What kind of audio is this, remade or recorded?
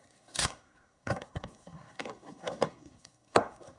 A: remade